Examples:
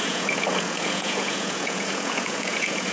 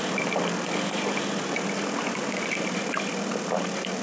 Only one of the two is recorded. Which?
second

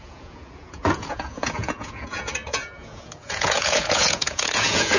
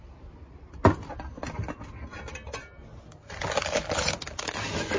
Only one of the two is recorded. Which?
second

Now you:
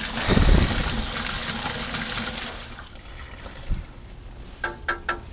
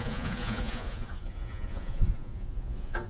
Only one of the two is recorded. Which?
first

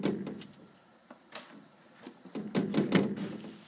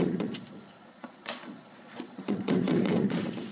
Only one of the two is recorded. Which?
first